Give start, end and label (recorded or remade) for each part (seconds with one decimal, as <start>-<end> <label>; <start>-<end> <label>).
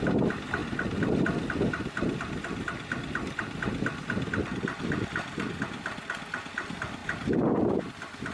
0.0-0.6 recorded; 0.6-5.5 remade; 5.5-8.3 recorded